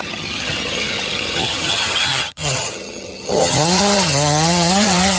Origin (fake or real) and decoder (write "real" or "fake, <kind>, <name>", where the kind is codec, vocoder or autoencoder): fake, vocoder, HiFi-GAN